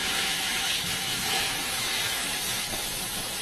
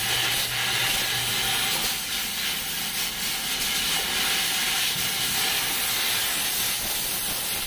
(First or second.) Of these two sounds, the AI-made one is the first